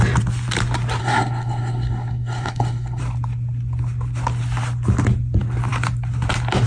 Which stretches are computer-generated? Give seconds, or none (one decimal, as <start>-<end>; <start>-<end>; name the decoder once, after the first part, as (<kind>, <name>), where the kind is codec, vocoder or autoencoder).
1.0-3.0 (codec, SNAC)